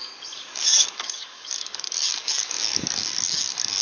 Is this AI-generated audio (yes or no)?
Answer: yes